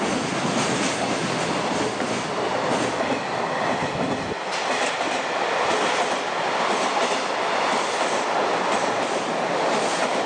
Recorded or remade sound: recorded